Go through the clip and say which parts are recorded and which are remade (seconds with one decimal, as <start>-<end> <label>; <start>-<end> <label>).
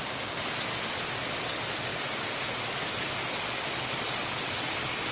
0.0-5.1 recorded